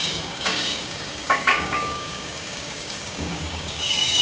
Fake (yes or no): yes